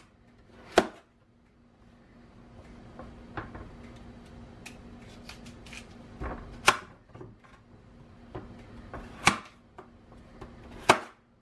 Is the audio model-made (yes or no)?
no